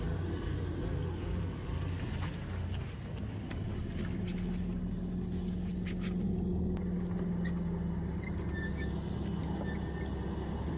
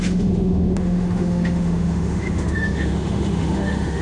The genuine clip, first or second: first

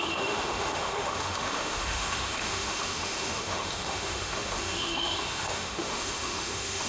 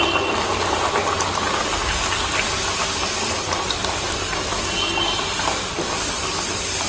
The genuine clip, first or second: second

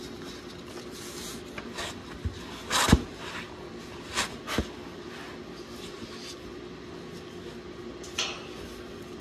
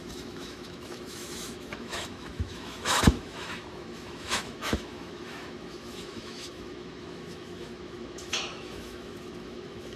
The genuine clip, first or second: first